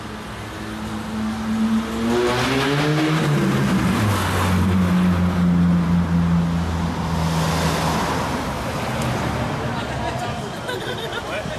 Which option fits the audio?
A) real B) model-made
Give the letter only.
A